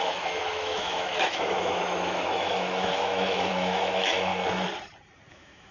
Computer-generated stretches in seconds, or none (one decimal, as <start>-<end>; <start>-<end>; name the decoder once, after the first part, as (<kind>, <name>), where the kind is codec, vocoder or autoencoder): 0.0-4.3 (autoencoder, DAC-VAE); 5.3-5.7